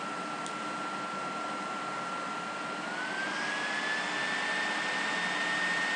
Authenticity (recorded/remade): recorded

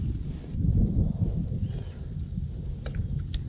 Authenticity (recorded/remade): recorded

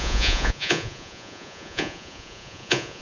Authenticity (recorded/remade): remade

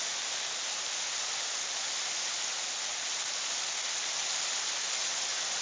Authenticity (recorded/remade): recorded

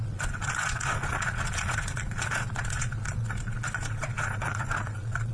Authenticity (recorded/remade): remade